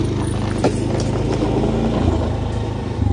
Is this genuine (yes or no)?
yes